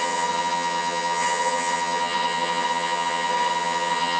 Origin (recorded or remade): remade